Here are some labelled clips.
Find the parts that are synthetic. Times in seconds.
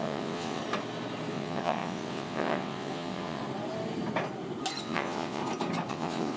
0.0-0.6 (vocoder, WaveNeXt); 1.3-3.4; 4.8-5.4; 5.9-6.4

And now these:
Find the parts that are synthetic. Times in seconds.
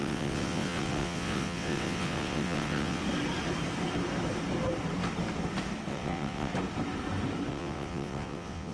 0.0-3.0 (vocoder, WaveNeXt); 5.9-6.5; 7.5-8.7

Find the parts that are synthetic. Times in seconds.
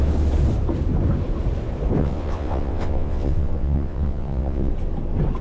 2.0-4.7 (vocoder, WaveNeXt)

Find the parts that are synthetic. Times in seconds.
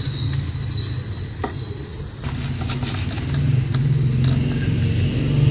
none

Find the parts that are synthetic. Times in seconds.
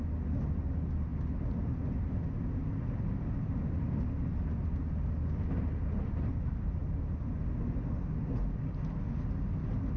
none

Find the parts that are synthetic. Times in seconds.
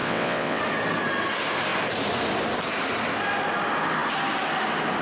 0.0-0.6 (vocoder, WaveNeXt)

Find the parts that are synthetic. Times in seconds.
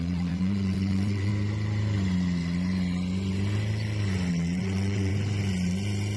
0.0-1.3 (vocoder, WaveNeXt); 4.3-5.1